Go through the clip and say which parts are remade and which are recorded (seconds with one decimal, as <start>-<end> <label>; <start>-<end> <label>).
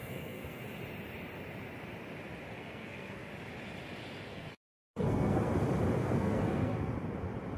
0.0-0.6 remade; 0.6-2.5 recorded; 2.5-3.3 remade; 3.3-4.3 recorded; 4.3-5.5 remade; 5.5-6.0 recorded; 6.0-6.9 remade; 6.9-7.6 recorded